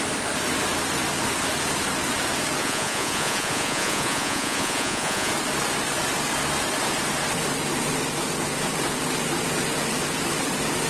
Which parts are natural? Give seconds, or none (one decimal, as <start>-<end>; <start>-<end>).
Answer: 0.0-2.6; 5.3-10.9